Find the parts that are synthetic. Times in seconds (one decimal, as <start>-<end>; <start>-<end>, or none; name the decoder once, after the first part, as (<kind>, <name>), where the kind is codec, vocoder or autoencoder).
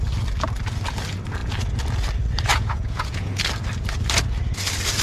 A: 2.5-3.4 (vocoder, Vocos)